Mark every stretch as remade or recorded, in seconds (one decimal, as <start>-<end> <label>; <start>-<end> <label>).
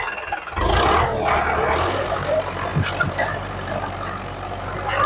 0.0-5.1 recorded